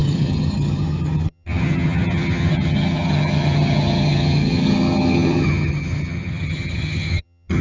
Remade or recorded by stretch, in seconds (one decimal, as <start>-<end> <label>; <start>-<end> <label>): 0.0-7.6 remade